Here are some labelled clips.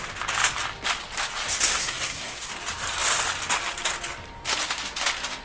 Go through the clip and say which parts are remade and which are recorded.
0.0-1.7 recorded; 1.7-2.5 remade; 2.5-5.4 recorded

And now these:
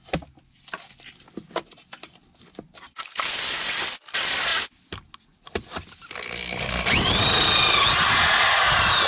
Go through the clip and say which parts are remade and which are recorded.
0.0-9.1 recorded

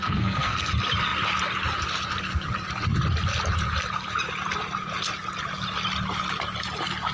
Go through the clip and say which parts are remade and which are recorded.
0.0-0.7 remade; 0.7-7.1 recorded

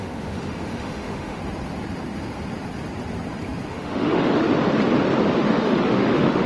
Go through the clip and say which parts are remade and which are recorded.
0.0-1.4 remade; 1.4-3.7 recorded; 3.7-4.5 remade; 4.5-5.4 recorded; 5.4-6.5 remade

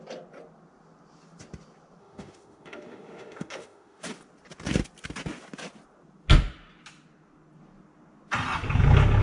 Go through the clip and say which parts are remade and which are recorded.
0.0-2.0 recorded; 2.0-4.0 remade; 4.0-9.2 recorded

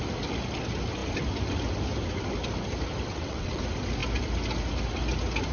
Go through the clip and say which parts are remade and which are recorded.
0.0-3.1 recorded; 3.1-3.6 remade; 3.6-5.5 recorded

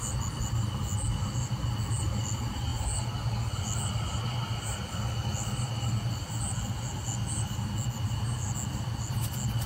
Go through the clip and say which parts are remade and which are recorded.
0.0-9.7 recorded